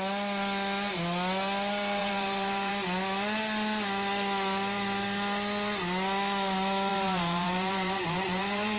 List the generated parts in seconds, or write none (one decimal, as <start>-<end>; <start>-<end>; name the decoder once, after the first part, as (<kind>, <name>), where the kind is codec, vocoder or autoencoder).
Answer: 2.0-2.7 (vocoder, BigVGAN v2); 6.9-8.8